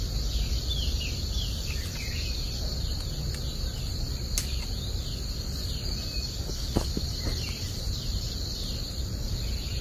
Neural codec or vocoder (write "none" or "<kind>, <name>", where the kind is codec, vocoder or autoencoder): none